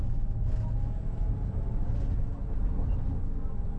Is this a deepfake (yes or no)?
no